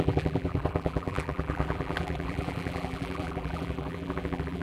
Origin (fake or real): fake